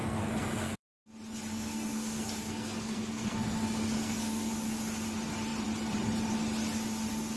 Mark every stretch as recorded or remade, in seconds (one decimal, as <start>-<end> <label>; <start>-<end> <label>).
0.0-0.9 remade; 0.9-1.5 recorded; 1.5-4.5 remade; 4.5-7.4 recorded